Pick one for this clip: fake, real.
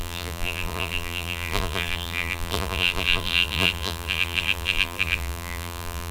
fake